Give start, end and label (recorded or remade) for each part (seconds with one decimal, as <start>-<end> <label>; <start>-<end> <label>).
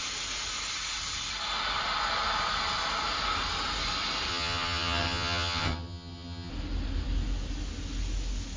0.0-4.3 recorded; 4.3-6.5 remade; 6.5-8.6 recorded